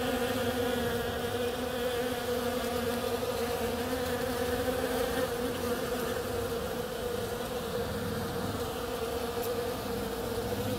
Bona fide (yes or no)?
yes